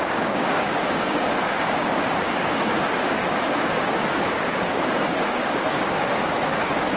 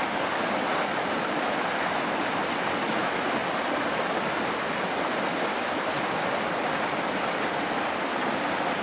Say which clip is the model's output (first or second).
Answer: first